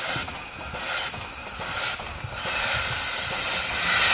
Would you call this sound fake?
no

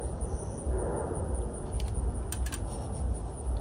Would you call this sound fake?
no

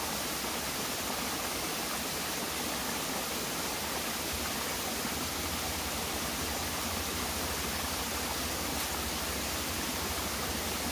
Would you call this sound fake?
no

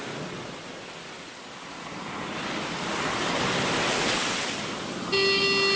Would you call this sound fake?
no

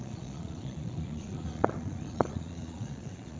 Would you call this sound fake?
yes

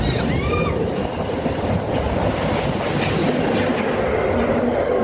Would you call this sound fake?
no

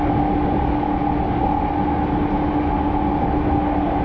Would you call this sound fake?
no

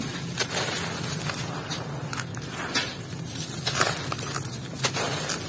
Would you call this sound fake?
no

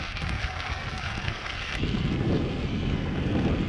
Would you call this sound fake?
yes